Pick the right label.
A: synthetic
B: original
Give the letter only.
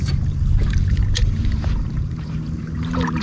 A